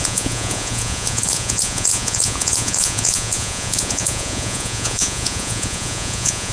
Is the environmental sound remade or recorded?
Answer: remade